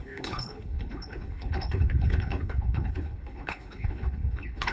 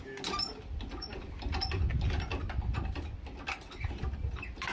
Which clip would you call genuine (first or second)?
second